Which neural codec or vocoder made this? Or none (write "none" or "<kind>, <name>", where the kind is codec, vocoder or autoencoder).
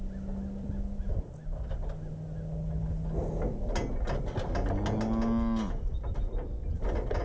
none